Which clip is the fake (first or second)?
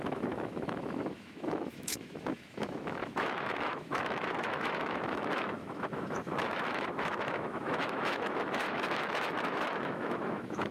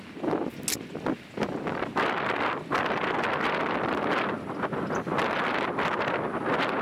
first